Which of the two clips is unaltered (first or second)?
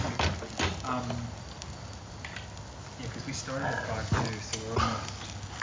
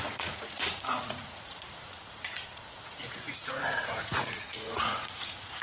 first